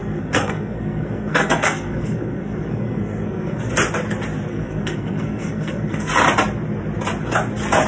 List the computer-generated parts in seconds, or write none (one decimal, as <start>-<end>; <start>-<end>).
0.0-3.7; 4.5-6.1